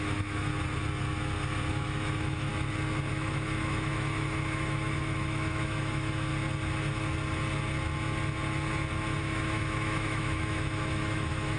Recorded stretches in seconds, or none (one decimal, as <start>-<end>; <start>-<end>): 0.5-1.7; 2.5-3.1; 6.3-9.2